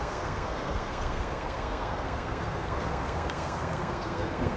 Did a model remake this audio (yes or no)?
yes